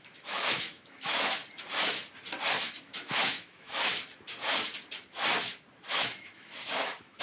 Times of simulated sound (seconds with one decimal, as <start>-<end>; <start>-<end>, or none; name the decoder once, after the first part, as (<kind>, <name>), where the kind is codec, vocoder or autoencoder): 0.0-1.4 (autoencoder, DAC-VAE); 2.5-3.9; 5.9-7.2